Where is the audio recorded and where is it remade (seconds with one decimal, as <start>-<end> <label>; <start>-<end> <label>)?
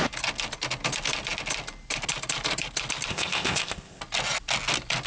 0.0-3.1 recorded; 3.1-4.0 remade; 4.0-5.1 recorded